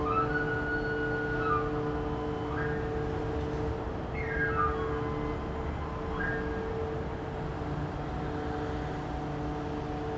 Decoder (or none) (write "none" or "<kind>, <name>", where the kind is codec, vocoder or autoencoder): none